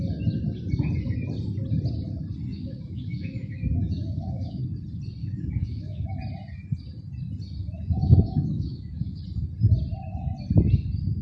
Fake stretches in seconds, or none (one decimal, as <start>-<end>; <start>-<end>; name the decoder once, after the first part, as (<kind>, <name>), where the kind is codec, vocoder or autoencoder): 2.5-4.6 (autoencoder, DAC-VAE); 5.2-6.1; 7.6-9.2